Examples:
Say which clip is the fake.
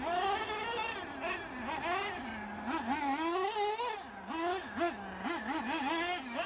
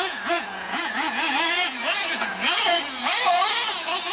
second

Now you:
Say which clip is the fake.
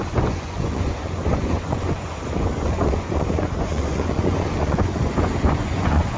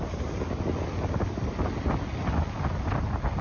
first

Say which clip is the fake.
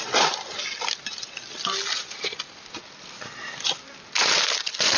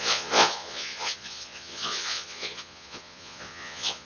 second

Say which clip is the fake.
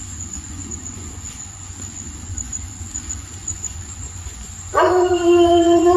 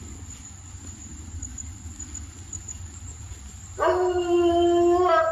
first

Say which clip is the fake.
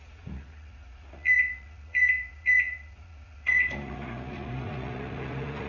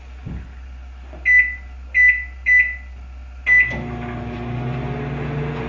first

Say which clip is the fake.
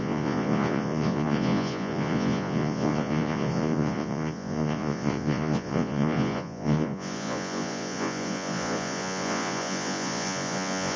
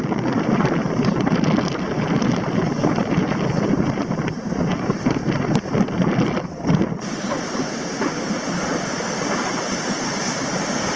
first